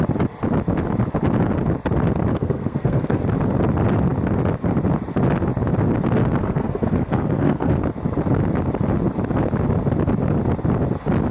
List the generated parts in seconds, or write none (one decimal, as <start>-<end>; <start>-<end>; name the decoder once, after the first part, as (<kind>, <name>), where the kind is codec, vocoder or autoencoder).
2.3-3.2 (codec, SNAC); 6.4-7.7